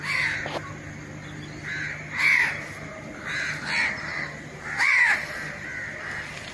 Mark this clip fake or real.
real